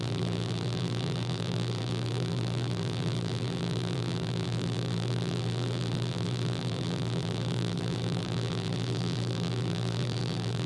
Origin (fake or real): fake